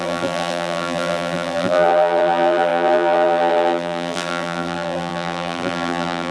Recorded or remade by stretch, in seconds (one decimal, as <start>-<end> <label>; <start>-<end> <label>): 0.0-6.3 remade